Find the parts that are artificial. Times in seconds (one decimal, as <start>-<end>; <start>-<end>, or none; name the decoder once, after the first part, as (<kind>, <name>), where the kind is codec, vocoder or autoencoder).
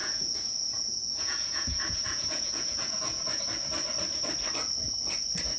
0.0-3.4 (vocoder, Vocos)